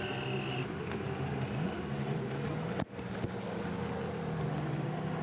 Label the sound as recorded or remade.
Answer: recorded